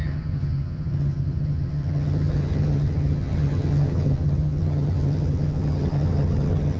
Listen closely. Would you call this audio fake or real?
fake